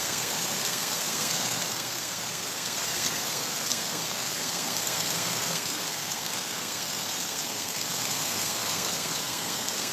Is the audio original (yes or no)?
no